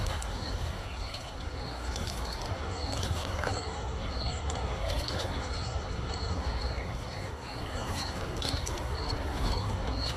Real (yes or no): no